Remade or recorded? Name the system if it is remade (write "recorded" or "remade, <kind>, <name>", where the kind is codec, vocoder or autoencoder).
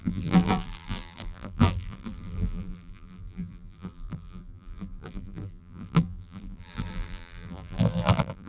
remade, vocoder, BigVGAN v2